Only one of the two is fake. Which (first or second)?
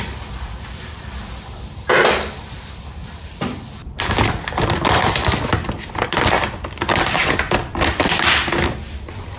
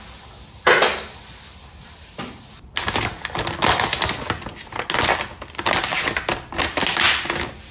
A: first